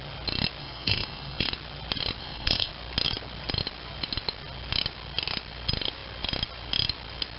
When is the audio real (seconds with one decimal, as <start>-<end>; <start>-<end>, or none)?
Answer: 0.0-0.6; 1.5-2.2; 2.7-7.4